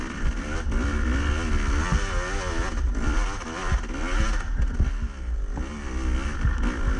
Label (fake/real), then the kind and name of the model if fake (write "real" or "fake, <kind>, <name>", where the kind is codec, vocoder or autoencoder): real